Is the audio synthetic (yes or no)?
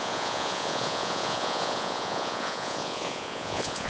yes